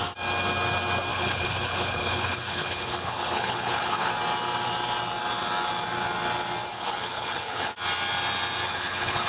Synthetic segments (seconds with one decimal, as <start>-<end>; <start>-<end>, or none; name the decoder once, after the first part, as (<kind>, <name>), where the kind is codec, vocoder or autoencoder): 1.1-4.1 (codec, HILCodec); 6.7-7.7; 8.7-9.3

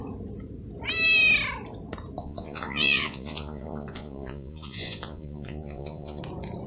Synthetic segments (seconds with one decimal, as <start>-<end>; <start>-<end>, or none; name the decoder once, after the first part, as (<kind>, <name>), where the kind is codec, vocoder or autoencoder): 2.2-6.2 (vocoder, Vocos)

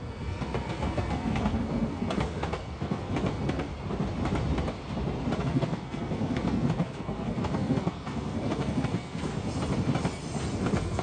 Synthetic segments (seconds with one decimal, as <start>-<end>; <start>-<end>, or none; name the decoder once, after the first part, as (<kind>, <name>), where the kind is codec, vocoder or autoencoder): 0.0-3.7 (codec, SNAC); 5.4-9.3; 10.6-11.0